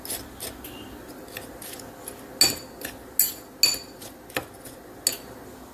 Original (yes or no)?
yes